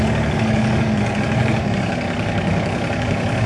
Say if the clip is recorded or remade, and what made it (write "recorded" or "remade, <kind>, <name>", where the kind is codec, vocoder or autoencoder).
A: remade, codec, DAC